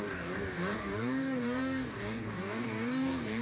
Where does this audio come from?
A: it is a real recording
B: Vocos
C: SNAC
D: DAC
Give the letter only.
D